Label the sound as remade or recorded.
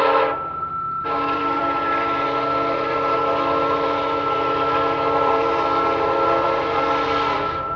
remade